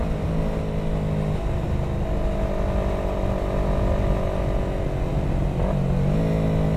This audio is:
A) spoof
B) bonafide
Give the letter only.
B